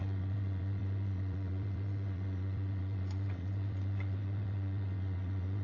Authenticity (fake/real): fake